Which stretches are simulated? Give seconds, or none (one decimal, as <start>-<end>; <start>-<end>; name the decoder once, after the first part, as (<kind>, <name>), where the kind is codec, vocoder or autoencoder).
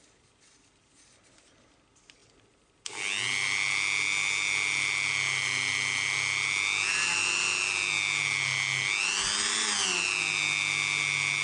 none